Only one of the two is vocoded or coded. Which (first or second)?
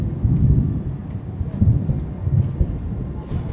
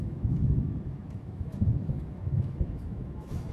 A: second